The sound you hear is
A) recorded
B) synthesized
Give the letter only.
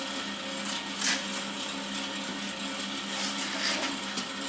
A